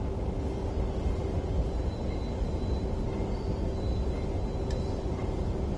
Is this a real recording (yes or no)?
yes